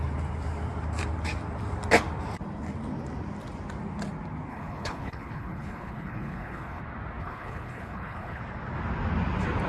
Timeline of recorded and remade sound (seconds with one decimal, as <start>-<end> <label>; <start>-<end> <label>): 0.0-4.5 recorded; 4.5-6.8 remade; 6.8-7.2 recorded; 7.2-8.4 remade; 8.4-9.7 recorded